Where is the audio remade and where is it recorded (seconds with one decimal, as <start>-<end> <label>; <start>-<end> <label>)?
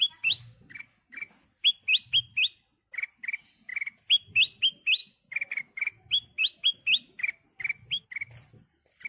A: 0.0-9.1 recorded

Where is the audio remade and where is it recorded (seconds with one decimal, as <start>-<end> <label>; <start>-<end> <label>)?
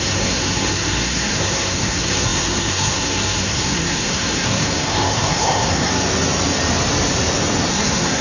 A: 0.0-5.9 remade; 5.9-7.7 recorded; 7.7-8.2 remade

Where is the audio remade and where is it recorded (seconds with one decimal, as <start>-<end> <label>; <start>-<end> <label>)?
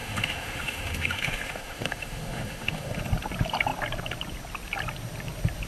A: 0.0-3.0 remade; 3.0-5.7 recorded